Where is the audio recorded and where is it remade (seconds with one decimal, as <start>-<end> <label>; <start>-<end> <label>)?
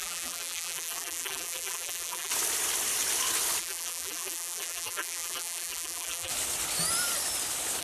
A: 0.0-2.3 remade; 2.3-3.6 recorded; 3.6-6.3 remade; 6.3-7.8 recorded